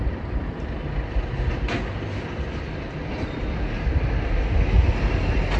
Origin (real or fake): real